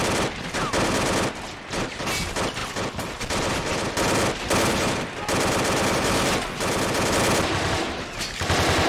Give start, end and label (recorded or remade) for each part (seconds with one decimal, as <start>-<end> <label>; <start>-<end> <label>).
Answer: 0.0-8.9 recorded